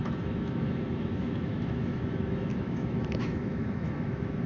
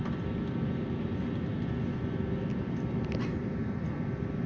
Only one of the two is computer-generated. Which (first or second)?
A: first